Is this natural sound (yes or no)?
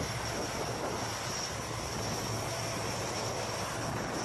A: yes